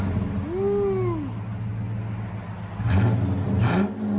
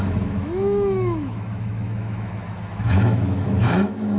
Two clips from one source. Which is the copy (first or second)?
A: second